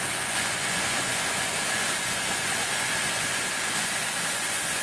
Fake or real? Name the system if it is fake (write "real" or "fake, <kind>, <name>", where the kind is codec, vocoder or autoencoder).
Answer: fake, vocoder, Vocos